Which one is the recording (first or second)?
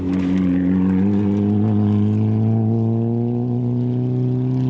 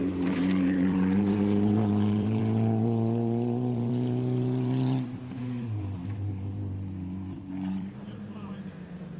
first